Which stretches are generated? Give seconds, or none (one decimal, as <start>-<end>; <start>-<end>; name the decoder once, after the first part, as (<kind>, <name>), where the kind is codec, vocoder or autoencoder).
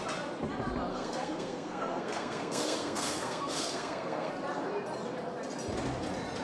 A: 0.9-4.3 (codec, SNAC)